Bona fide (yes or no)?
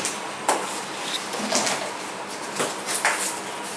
yes